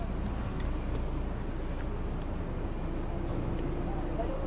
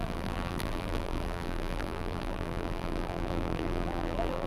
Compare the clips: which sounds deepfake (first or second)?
second